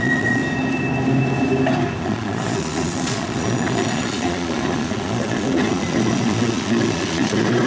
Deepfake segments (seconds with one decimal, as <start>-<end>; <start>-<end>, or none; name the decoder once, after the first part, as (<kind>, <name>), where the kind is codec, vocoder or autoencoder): 0.0-0.4 (vocoder, Vocos); 2.0-7.7